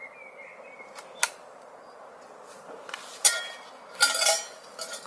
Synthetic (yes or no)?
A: no